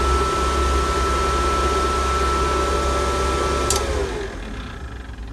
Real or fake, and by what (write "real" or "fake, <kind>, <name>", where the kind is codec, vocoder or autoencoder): real